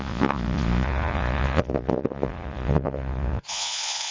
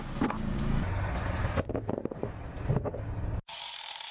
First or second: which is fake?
first